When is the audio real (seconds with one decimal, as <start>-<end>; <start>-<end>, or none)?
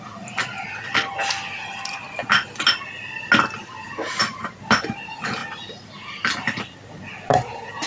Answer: 0.0-7.9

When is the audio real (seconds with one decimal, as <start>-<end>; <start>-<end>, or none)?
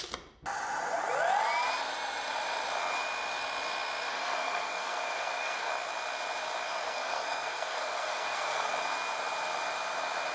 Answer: 0.0-4.1; 5.7-6.7; 8.7-10.3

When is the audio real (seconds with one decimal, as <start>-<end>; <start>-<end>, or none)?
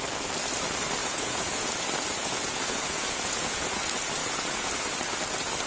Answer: 0.0-1.0; 1.7-2.2; 3.8-4.2; 4.7-5.7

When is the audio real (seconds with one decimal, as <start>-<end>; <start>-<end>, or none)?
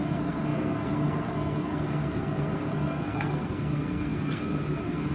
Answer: none